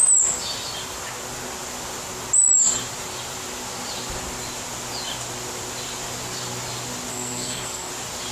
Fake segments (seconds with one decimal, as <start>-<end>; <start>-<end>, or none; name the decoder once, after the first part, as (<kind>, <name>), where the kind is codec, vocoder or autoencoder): 7.1-7.9 (codec, SNAC)